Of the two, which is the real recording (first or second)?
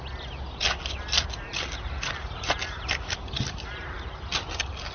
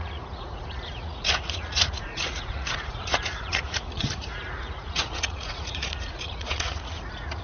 first